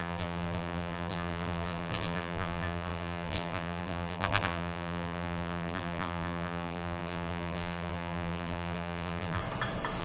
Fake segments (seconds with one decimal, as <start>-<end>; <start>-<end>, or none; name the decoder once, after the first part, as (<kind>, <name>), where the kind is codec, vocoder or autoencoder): 0.0-9.4 (vocoder, BigVGAN v2)